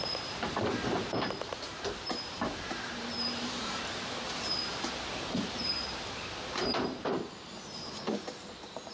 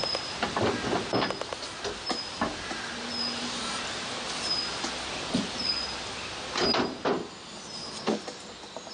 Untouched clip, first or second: second